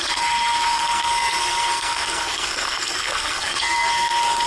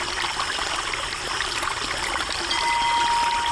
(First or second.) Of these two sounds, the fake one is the first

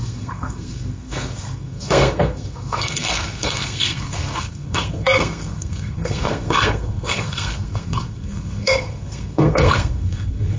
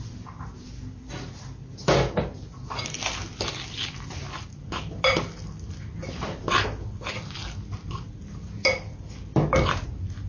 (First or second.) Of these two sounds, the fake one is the first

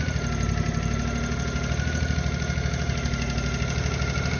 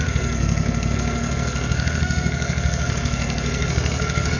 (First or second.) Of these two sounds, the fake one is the second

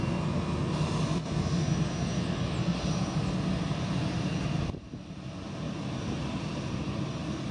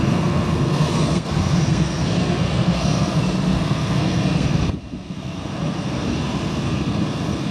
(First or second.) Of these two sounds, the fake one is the second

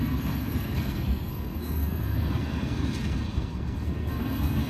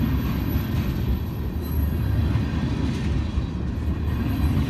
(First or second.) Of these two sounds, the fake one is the first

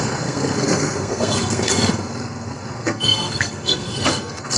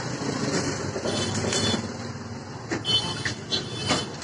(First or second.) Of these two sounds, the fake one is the first